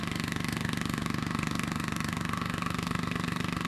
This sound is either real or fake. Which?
fake